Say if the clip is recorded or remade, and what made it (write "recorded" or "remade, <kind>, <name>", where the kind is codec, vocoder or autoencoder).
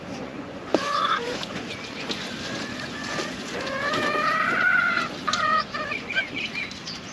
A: remade, vocoder, Vocos